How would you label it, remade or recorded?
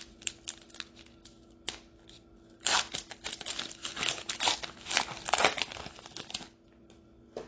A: recorded